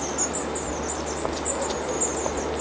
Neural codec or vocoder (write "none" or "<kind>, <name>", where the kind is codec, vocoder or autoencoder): none